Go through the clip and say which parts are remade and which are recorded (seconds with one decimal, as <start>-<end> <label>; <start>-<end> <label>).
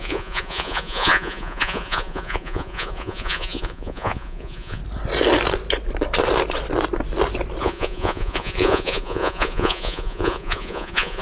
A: 0.0-4.8 remade; 4.8-7.6 recorded; 7.6-11.2 remade